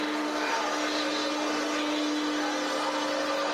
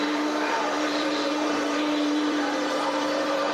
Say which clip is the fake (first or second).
second